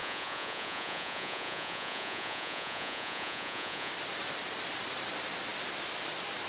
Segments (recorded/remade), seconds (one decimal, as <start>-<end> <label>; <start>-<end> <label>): 0.0-3.9 remade; 3.9-6.5 recorded